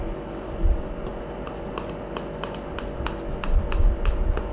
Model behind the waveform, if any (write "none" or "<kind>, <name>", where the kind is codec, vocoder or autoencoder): none